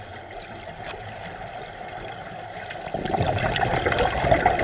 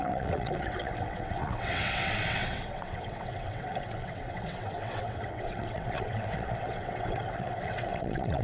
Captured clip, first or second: first